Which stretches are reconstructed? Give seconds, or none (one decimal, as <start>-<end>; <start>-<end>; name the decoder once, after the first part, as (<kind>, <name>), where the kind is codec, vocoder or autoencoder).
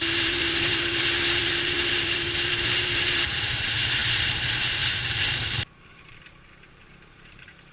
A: 0.0-7.7 (vocoder, BigVGAN v2)